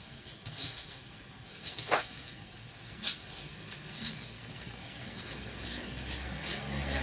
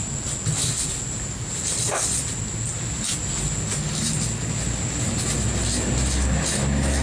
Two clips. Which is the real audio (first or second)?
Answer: second